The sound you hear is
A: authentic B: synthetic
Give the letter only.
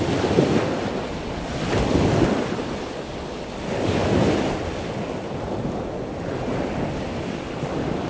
A